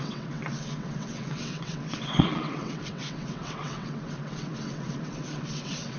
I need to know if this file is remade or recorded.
remade